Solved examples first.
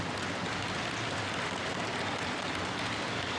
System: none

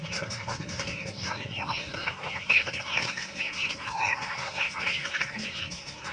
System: codec, SNAC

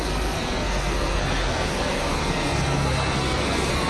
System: codec, SNAC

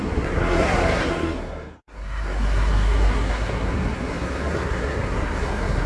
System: codec, SNAC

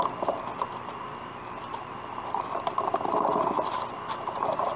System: none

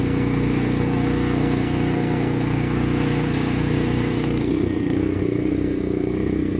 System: codec, SNAC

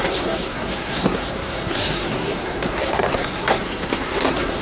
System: codec, SNAC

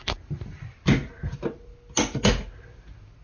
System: none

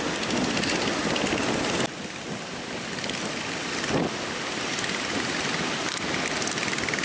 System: none